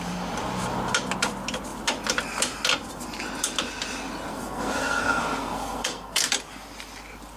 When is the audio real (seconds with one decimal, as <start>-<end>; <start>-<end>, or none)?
0.0-4.3; 6.3-7.4